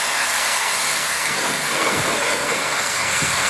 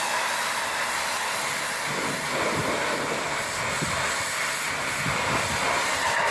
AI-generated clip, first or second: first